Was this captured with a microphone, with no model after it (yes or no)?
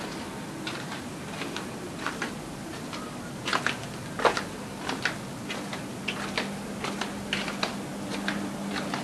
yes